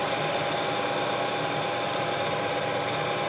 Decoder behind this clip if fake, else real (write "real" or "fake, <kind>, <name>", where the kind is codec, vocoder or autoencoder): real